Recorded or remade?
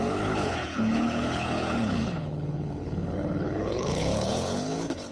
remade